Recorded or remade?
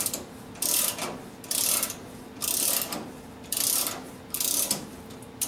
recorded